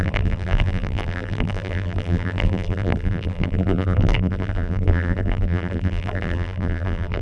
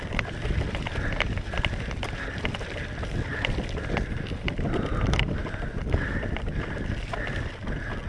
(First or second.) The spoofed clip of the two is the first